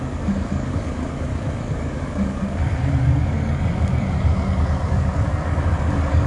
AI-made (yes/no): yes